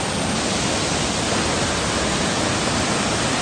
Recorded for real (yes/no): yes